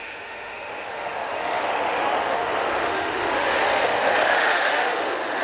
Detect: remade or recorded remade